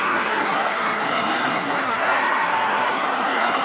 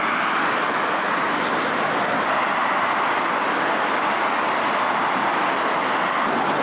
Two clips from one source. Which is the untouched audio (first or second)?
second